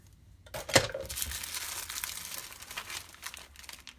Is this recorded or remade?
recorded